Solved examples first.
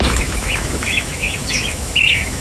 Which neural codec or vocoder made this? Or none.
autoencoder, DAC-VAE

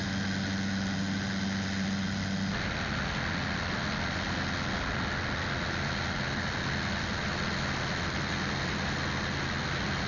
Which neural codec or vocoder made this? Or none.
none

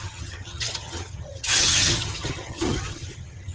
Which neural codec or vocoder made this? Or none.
vocoder, HiFi-GAN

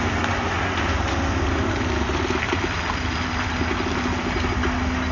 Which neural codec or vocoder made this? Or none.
none